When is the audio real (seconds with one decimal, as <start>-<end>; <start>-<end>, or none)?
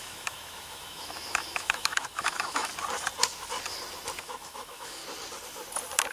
2.7-4.2; 5.0-6.1